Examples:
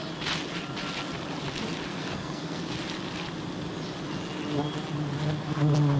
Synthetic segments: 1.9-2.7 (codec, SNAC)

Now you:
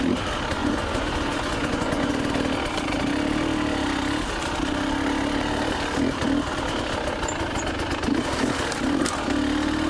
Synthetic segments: 0.6-2.1 (vocoder, Vocos)

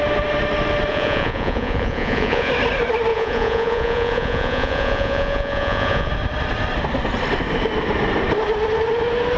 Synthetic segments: 0.9-2.5 (vocoder, Vocos); 3.1-6.1

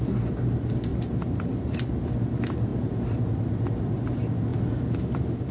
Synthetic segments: 0.9-1.5 (vocoder, BigVGAN v2)

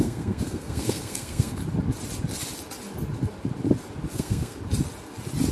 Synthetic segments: 0.0-1.6 (codec, SNAC); 4.1-4.6

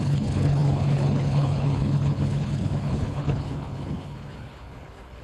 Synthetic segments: 0.0-5.2 (codec, HILCodec)

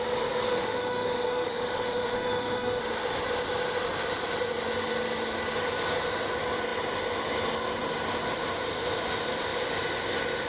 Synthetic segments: 0.5-2.8 (autoencoder, DAC-VAE)